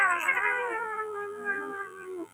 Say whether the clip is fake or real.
fake